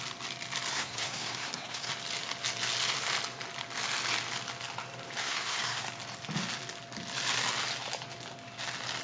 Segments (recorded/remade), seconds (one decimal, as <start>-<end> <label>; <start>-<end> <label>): 0.0-0.7 recorded; 0.7-1.9 remade; 1.9-5.2 recorded; 5.2-5.8 remade; 5.8-9.0 recorded